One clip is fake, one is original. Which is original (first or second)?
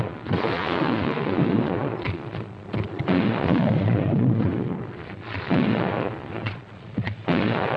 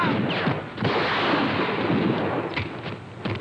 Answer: second